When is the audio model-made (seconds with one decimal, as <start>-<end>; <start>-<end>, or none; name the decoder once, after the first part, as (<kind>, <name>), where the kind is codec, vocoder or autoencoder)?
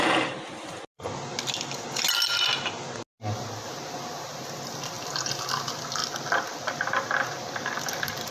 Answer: none